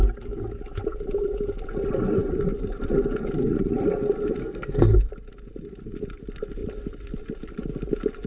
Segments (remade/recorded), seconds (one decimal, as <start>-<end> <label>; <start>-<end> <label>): 0.0-4.4 recorded; 4.4-5.1 remade; 5.1-8.3 recorded